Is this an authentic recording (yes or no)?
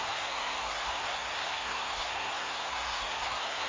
no